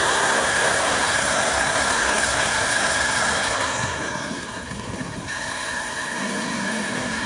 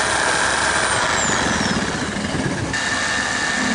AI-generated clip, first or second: first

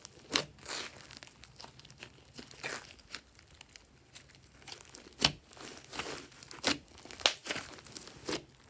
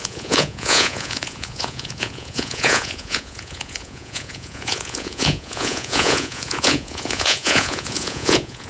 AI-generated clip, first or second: second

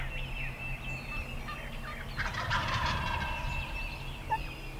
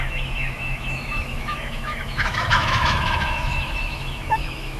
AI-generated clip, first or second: second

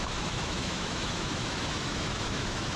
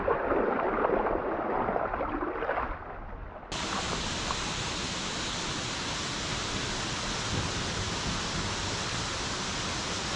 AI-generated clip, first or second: first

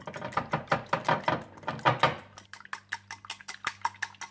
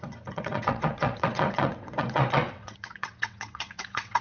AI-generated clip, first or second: second